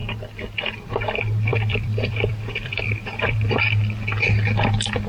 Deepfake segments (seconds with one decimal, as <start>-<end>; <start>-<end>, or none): 1.5-3.6